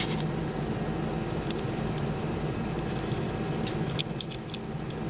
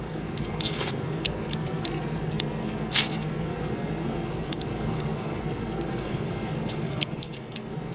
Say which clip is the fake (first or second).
second